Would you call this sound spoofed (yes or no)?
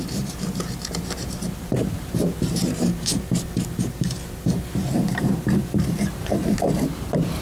yes